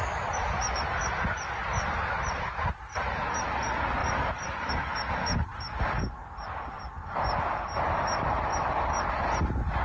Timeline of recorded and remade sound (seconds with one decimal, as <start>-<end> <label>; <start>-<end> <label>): 0.0-9.8 recorded